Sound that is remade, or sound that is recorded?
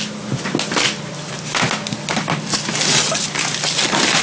recorded